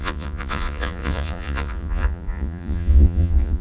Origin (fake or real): fake